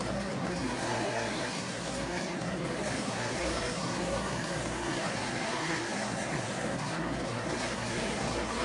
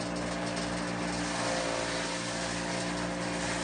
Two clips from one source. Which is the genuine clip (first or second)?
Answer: second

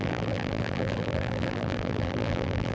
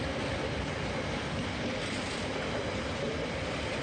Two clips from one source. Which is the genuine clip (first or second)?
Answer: second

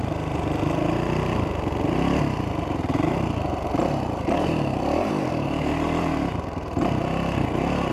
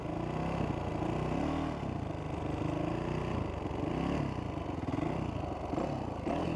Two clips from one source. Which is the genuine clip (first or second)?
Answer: second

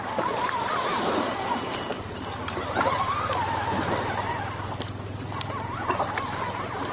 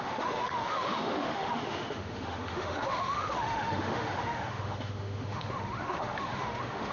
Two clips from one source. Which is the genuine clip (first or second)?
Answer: first